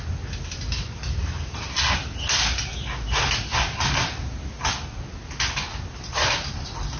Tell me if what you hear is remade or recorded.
recorded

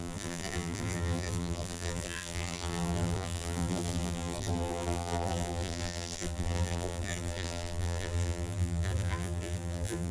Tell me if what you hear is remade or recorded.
remade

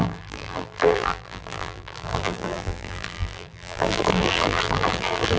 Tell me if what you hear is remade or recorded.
remade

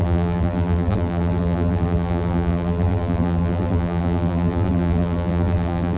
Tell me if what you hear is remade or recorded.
remade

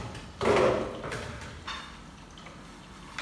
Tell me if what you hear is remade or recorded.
recorded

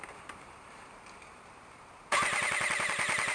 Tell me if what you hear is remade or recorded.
remade